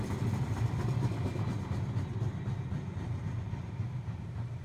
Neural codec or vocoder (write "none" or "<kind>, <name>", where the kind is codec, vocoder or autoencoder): none